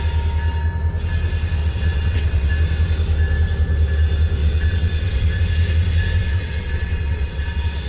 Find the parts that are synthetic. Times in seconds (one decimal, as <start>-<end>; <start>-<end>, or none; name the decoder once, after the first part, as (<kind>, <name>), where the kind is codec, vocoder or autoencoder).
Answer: 1.6-2.5 (vocoder, WaveNeXt); 4.4-5.4; 6.2-7.9